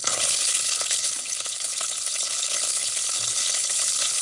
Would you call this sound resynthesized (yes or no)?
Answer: yes